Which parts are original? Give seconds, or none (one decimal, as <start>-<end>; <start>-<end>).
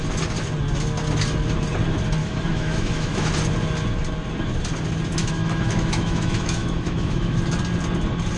0.0-2.2; 3.3-5.2; 7.4-8.4